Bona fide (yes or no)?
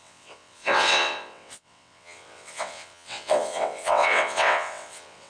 no